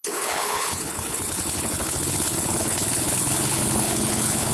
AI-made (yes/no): yes